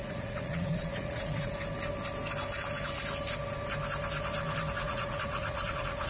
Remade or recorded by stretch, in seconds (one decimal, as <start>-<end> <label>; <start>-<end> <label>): 0.0-1.5 remade; 1.5-4.8 recorded; 4.8-6.1 remade